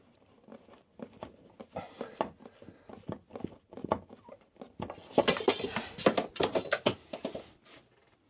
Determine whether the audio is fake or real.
real